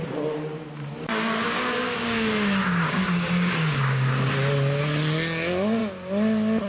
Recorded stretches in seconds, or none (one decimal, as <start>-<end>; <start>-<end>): 0.0-1.1; 4.3-6.7